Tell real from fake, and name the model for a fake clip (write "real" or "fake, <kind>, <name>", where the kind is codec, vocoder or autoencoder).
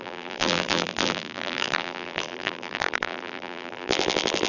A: fake, vocoder, BigVGAN v2